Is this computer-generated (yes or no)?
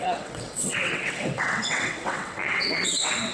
yes